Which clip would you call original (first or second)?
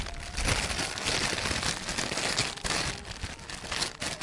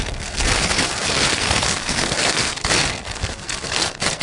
first